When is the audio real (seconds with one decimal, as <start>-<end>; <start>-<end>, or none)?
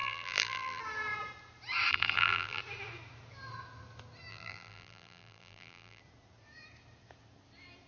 0.8-1.9; 2.6-4.3; 6.0-7.9